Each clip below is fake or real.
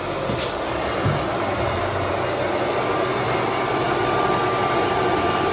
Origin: real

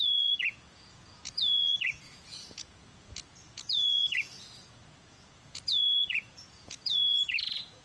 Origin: fake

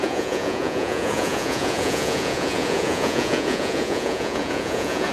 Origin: fake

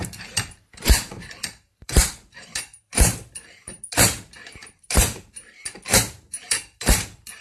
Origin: fake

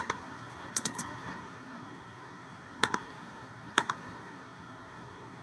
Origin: fake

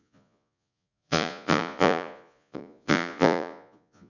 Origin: fake